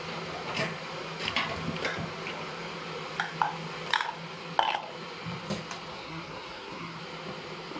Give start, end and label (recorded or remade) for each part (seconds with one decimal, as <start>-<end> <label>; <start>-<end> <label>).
0.0-5.9 recorded; 5.9-7.0 remade; 7.0-7.8 recorded